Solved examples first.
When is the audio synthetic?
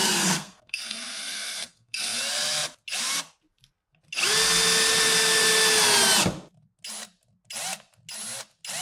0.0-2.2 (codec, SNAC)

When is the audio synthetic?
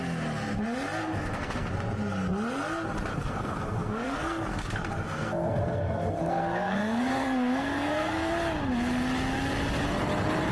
1.0-1.7 (codec, SNAC); 3.1-8.3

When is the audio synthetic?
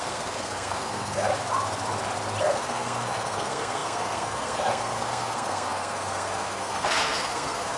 0.0-1.3 (codec, SNAC); 2.4-7.8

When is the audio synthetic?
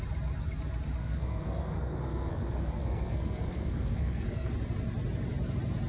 1.0-4.5 (codec, SNAC)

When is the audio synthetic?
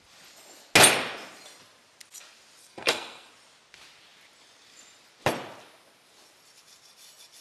2.6-3.3 (codec, SNAC)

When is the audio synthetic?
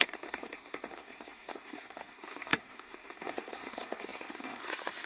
0.0-5.1 (codec, SNAC)